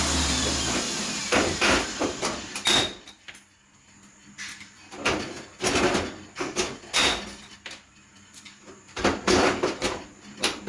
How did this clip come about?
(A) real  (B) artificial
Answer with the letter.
A